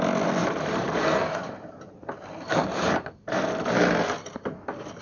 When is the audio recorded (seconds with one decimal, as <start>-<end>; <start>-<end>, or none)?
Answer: 0.0-0.4; 3.4-5.0